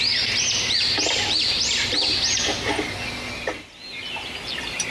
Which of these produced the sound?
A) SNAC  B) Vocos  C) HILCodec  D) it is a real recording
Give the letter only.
D